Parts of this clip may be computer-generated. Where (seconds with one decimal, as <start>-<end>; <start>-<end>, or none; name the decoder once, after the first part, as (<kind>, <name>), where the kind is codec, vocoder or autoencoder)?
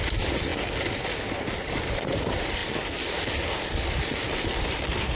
none